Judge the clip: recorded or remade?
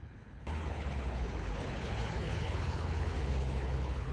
remade